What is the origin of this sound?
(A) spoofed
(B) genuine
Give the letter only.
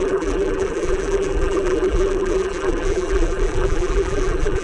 A